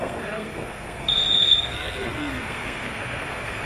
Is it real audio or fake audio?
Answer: fake